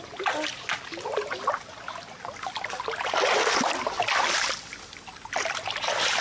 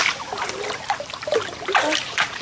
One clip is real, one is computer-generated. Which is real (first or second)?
first